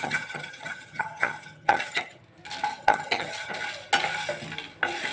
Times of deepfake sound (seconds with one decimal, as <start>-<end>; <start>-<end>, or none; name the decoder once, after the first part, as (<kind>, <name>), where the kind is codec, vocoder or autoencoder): 0.0-2.2 (vocoder, HiFi-GAN); 2.7-3.5